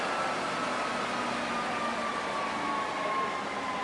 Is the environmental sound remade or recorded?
recorded